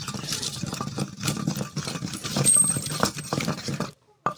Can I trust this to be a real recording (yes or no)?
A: no